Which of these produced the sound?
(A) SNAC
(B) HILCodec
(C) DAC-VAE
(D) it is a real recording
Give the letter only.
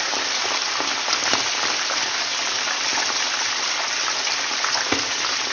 D